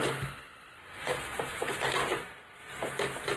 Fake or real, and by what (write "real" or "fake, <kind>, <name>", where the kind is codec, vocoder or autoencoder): real